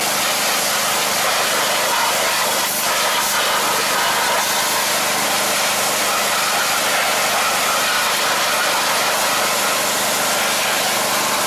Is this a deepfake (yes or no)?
no